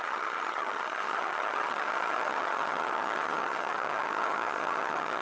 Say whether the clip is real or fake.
fake